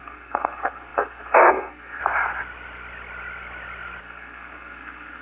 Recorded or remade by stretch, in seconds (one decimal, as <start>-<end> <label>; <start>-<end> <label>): 0.0-2.0 remade; 2.0-4.0 recorded; 4.0-5.2 remade